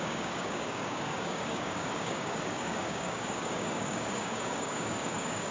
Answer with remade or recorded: remade